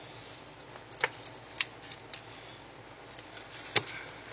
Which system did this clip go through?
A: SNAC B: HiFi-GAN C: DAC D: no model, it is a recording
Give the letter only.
D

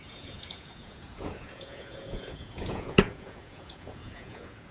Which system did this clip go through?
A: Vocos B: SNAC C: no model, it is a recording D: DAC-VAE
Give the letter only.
A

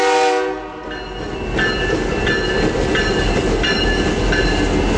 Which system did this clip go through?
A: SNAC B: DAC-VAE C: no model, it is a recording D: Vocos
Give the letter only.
C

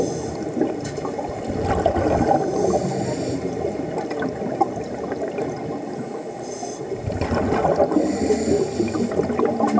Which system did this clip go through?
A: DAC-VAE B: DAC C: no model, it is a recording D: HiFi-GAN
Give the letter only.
C